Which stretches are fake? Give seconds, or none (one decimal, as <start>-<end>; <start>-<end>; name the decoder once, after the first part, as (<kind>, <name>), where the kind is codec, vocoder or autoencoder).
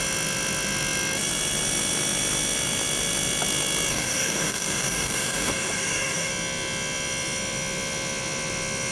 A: 3.9-6.3 (codec, DAC)